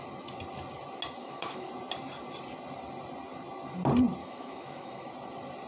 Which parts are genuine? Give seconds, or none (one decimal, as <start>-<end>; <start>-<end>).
0.0-1.2; 1.7-4.2; 5.1-5.7